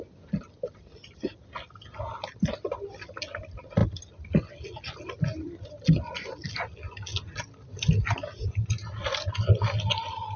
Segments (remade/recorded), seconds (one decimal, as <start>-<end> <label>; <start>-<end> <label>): 0.0-10.4 recorded